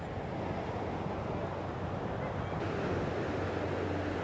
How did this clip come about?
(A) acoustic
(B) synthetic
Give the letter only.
A